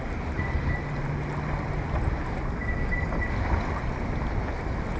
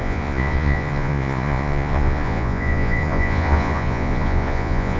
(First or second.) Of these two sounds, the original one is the first